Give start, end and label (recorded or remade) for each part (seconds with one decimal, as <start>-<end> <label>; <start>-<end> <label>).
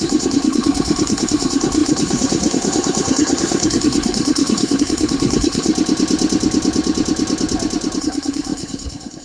0.0-5.7 remade; 5.7-8.0 recorded; 8.0-9.2 remade